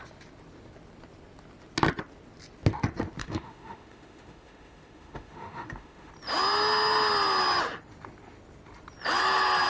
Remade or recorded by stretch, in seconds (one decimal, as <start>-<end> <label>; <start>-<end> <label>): 0.0-3.2 recorded; 3.2-6.1 remade; 6.1-9.7 recorded